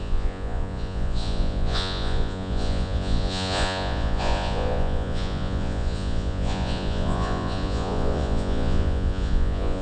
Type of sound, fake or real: fake